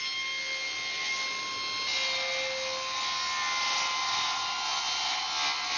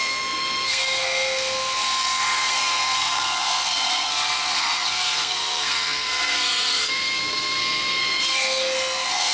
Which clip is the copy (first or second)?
second